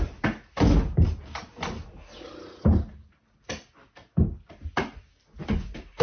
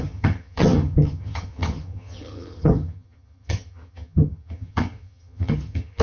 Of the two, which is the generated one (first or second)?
second